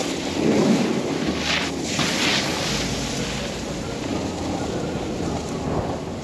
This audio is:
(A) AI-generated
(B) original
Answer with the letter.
B